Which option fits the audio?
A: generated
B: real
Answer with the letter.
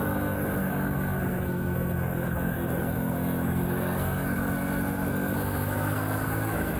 A